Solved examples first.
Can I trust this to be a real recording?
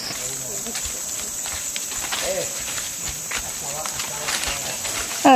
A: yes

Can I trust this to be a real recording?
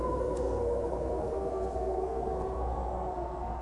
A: no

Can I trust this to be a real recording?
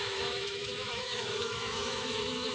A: no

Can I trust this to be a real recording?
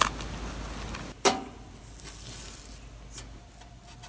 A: yes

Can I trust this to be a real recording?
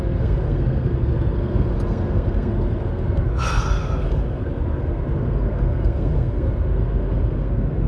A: no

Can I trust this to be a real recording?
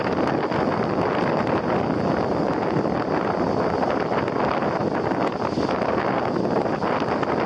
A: yes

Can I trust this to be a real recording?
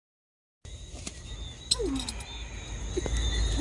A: yes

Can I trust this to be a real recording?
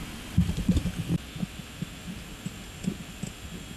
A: yes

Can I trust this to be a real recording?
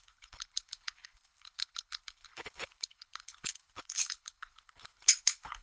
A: no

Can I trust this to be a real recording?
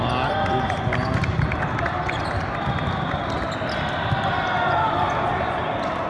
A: yes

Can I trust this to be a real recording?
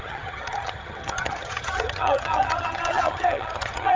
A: no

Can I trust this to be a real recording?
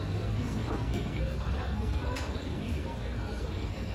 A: no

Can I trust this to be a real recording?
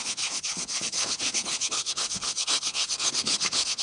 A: no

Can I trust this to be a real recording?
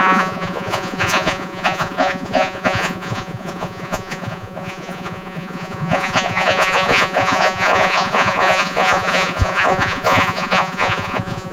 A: no